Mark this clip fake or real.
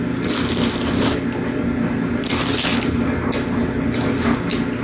real